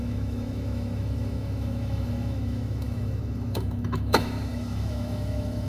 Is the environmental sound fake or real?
fake